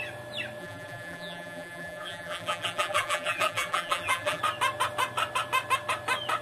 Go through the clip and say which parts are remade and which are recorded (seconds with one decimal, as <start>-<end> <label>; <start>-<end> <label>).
0.0-0.6 recorded; 0.6-4.4 remade; 4.4-6.4 recorded